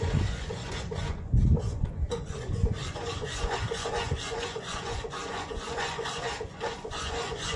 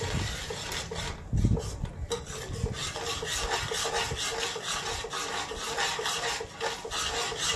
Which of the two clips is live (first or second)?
second